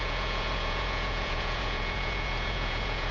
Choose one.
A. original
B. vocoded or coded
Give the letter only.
B